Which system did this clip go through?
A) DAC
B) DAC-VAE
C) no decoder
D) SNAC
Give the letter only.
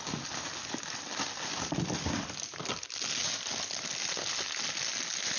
C